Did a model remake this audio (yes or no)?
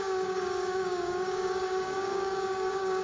yes